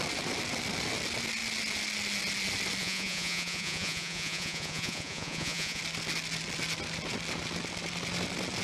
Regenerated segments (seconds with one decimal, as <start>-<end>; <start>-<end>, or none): 2.8-5.8